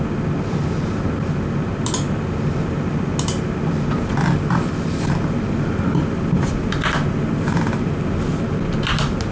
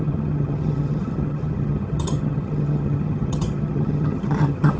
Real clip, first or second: first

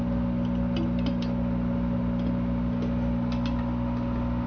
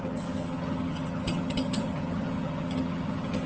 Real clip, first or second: first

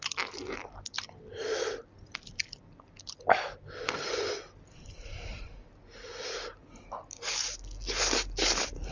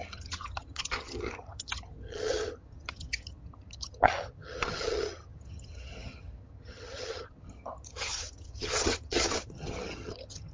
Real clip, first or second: first